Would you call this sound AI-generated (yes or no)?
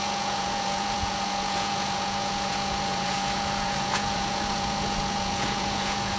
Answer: yes